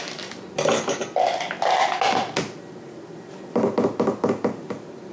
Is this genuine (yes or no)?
yes